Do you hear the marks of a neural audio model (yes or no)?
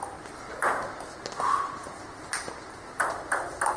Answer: no